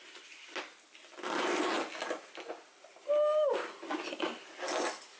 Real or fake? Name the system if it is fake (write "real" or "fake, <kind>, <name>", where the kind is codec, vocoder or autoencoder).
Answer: real